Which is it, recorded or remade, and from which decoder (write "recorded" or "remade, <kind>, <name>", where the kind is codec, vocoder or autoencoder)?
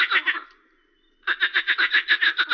recorded